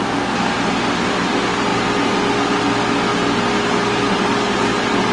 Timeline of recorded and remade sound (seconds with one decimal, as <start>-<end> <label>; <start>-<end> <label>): 0.0-5.1 recorded